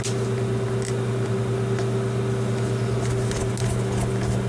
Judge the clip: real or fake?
real